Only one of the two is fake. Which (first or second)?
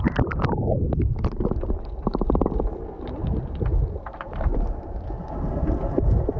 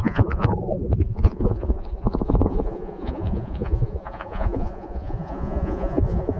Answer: second